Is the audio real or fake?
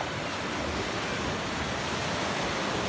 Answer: real